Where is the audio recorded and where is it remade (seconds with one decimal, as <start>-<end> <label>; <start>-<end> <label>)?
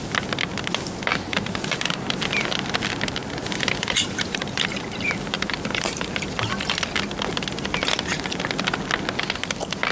0.0-1.1 recorded; 1.1-2.2 remade; 2.2-3.2 recorded; 3.2-6.3 remade; 6.3-9.9 recorded